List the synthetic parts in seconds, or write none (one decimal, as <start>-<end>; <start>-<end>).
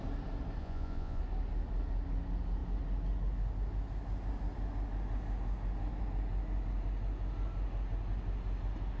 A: 0.6-1.2